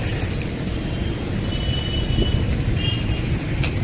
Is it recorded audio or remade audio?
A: recorded